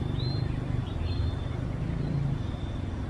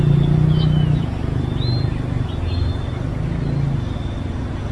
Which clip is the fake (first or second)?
first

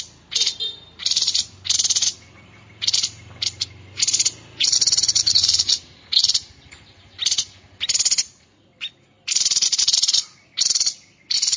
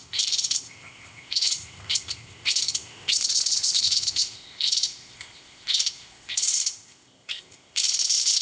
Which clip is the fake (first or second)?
second